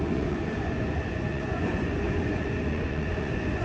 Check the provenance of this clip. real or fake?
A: fake